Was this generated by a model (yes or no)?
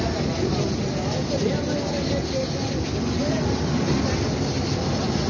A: no